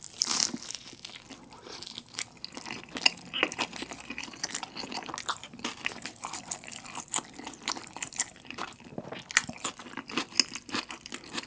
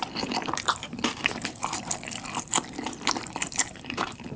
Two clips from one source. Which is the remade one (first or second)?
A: second